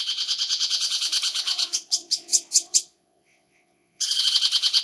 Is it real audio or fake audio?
fake